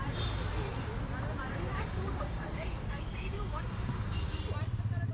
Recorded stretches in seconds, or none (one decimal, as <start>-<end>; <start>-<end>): 0.0-1.4; 4.4-5.1